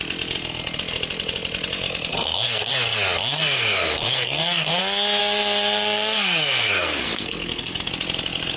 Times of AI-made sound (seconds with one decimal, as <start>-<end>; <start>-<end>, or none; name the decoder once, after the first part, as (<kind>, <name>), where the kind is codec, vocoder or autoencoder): 2.1-2.7 (codec, SNAC); 3.3-4.8; 5.2-7.9